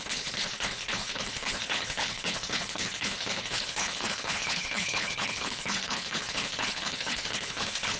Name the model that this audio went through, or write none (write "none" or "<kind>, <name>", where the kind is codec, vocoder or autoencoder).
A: codec, HILCodec